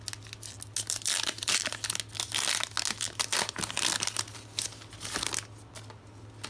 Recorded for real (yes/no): yes